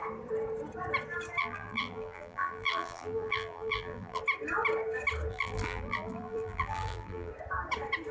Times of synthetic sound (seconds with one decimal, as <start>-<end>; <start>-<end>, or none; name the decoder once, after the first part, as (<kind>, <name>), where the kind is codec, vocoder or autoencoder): 1.4-4.2 (vocoder, BigVGAN v2); 5.3-7.3